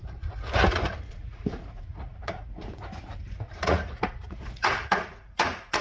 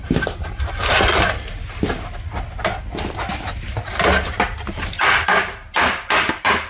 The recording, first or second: second